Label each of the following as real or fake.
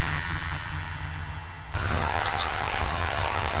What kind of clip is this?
fake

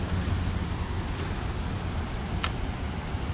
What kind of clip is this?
real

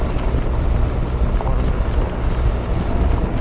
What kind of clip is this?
real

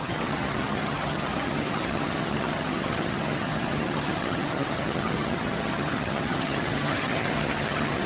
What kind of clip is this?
fake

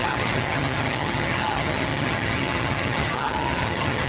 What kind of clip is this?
fake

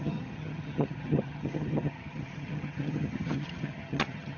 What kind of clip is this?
fake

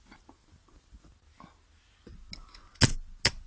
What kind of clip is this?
real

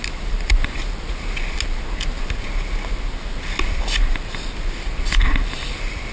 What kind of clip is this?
real